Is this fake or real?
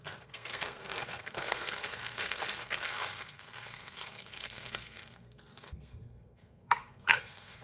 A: fake